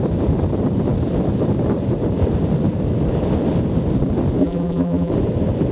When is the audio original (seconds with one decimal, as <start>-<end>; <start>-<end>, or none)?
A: 0.0-4.4; 5.1-5.7